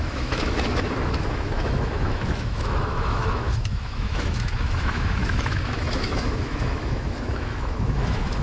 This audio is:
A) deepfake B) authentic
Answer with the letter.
A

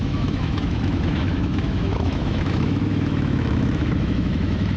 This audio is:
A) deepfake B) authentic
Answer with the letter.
A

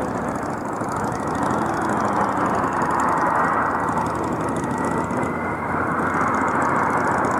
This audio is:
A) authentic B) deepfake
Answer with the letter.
A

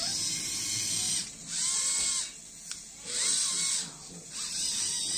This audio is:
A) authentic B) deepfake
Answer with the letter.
A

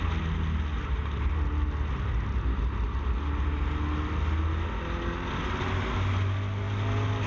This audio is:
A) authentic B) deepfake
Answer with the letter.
A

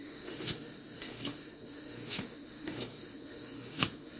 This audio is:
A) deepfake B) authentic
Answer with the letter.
A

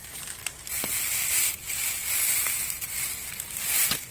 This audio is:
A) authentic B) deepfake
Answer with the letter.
A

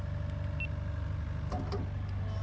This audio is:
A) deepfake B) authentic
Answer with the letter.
B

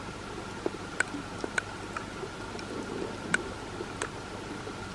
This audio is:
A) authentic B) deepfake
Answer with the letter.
A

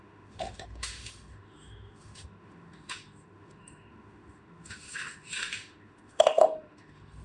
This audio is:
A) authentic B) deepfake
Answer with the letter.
B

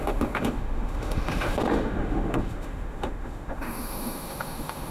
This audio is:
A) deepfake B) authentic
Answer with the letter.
A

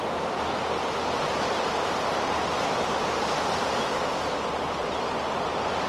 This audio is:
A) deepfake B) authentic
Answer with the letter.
B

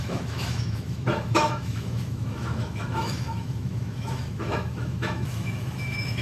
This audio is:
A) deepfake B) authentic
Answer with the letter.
A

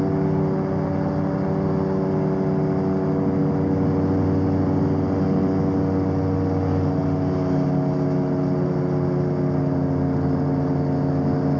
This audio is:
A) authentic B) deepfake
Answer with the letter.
A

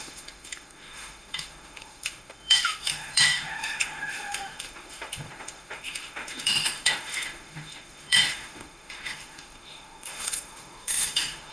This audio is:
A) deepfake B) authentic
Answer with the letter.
A